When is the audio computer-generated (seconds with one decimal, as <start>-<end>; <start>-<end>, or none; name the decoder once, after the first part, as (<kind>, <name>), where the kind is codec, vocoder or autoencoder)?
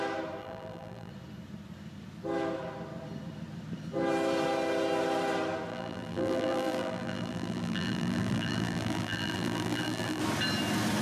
0.4-1.1 (vocoder, BigVGAN v2); 5.7-10.2